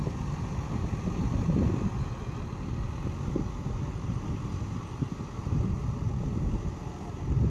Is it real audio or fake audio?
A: real